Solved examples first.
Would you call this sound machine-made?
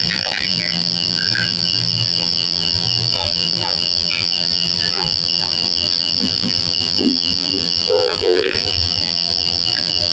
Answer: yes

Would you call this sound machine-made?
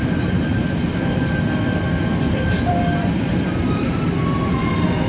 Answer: yes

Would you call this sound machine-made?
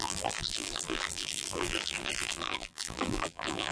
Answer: yes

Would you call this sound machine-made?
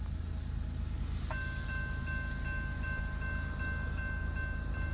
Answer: no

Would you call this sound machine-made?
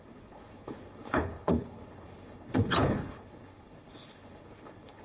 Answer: yes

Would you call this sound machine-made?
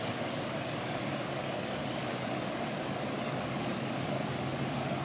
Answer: yes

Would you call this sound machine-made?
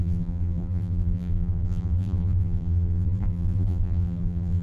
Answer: yes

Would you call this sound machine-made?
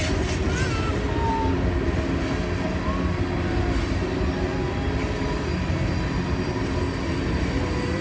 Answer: no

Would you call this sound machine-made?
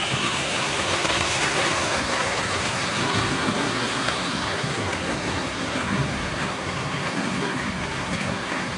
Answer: yes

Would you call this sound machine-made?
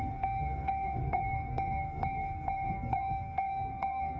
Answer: yes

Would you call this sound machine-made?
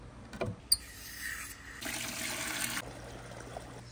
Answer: no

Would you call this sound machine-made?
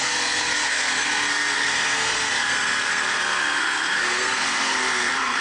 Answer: yes